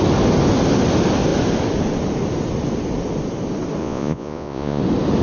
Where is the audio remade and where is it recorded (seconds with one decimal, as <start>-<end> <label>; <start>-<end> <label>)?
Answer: 0.0-3.8 recorded; 3.8-4.8 remade; 4.8-5.2 recorded